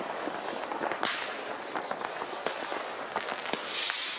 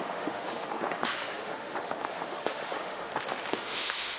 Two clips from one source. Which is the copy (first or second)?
second